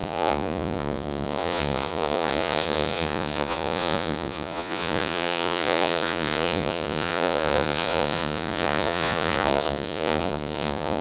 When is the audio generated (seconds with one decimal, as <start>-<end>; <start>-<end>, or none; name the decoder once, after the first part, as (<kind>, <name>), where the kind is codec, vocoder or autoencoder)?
0.0-11.0 (vocoder, Vocos)